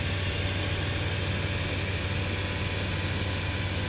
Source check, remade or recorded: recorded